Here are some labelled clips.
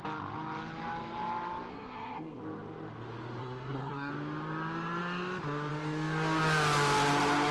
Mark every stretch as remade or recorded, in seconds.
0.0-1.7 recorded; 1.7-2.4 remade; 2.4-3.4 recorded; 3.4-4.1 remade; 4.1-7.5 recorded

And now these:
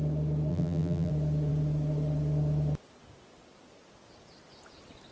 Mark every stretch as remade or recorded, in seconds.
0.0-0.5 recorded; 0.5-1.1 remade; 1.1-5.1 recorded

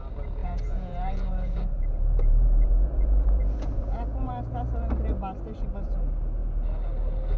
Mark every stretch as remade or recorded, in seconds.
0.0-0.4 recorded; 0.4-4.3 remade; 4.3-7.4 recorded

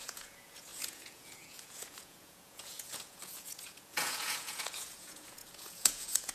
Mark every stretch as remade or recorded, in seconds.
0.0-6.3 remade

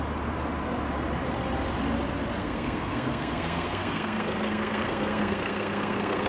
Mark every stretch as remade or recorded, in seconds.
0.0-2.4 recorded; 2.4-6.3 remade

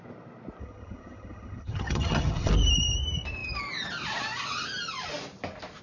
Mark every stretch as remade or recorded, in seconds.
0.0-0.6 recorded; 0.6-2.5 remade; 2.5-5.8 recorded

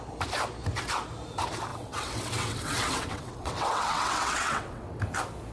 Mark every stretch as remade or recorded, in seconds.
0.0-1.7 recorded; 1.7-5.0 remade; 5.0-5.5 recorded